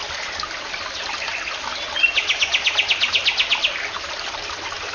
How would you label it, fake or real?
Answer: real